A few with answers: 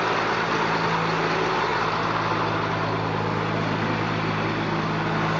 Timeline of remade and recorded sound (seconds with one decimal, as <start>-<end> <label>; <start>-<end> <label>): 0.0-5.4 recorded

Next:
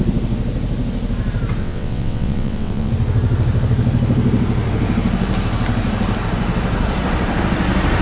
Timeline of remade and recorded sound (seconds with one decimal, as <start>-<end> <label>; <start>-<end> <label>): 0.0-1.6 recorded; 1.6-2.9 remade; 2.9-8.0 recorded

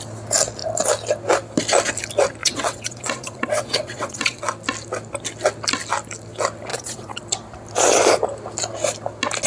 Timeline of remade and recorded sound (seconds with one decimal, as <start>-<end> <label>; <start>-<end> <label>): 0.0-2.4 recorded; 2.4-4.4 remade; 4.4-6.7 recorded; 6.7-7.2 remade; 7.2-9.5 recorded